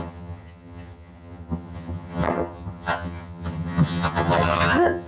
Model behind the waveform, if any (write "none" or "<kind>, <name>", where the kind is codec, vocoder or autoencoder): vocoder, HiFi-GAN